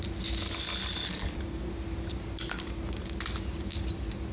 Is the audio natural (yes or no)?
yes